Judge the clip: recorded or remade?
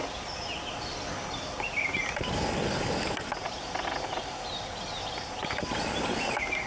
recorded